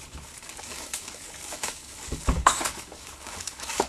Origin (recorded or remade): remade